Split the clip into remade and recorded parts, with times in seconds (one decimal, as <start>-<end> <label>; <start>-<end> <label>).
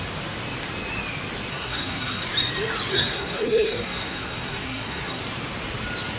0.0-1.5 recorded; 1.5-2.2 remade; 2.2-2.9 recorded; 2.9-5.2 remade; 5.2-6.2 recorded